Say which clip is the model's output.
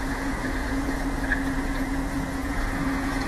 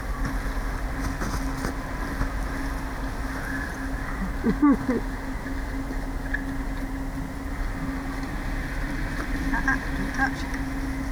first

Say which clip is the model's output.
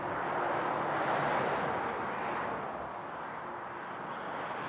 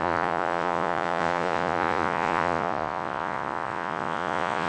second